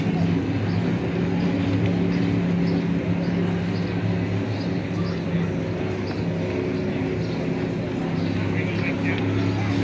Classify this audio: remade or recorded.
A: recorded